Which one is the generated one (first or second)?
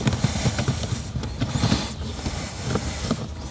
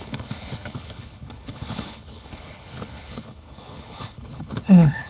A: second